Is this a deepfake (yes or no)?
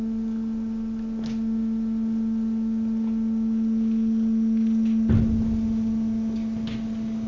no